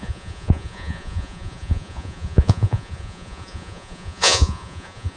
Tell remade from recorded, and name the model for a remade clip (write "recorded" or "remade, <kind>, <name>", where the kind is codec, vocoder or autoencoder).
remade, vocoder, Vocos